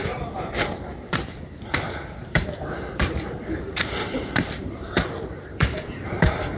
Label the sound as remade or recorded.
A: remade